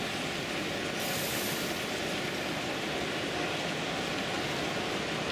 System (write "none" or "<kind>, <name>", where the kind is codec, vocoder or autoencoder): none